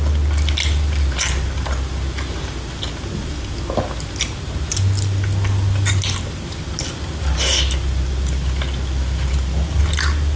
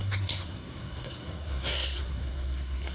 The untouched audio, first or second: first